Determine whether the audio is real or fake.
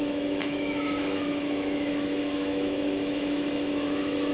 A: fake